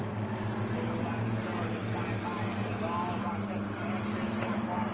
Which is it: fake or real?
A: real